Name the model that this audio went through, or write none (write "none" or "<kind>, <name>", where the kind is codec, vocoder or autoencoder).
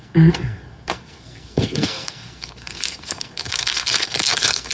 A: codec, SNAC